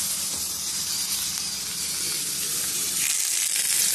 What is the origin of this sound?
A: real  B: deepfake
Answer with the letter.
A